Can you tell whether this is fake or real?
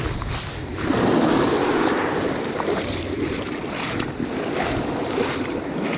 real